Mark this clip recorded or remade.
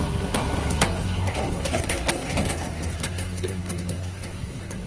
remade